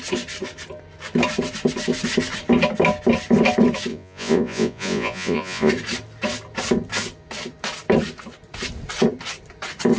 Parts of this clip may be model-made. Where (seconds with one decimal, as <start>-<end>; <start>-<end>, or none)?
3.9-5.7